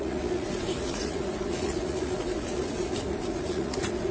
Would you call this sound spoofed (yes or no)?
yes